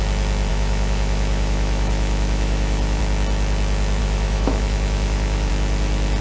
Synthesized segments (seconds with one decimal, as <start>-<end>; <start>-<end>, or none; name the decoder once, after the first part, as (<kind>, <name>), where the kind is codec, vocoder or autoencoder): 0.5-3.0 (autoencoder, DAC-VAE); 4.0-5.5